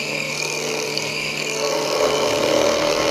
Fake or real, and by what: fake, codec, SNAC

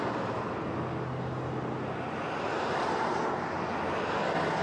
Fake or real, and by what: real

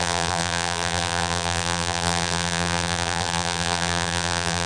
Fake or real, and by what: fake, vocoder, BigVGAN v2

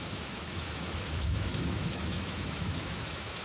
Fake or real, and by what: fake, autoencoder, DAC-VAE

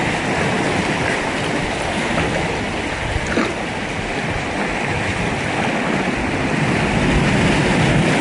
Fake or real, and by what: real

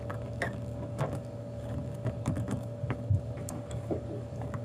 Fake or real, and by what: fake, codec, DAC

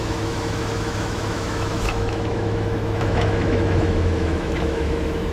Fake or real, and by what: fake, autoencoder, DAC-VAE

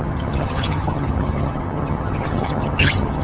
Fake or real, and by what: fake, vocoder, HiFi-GAN